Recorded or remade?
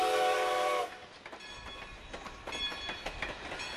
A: recorded